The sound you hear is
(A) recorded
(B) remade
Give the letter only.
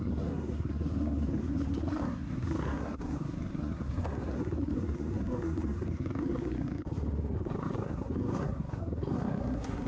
B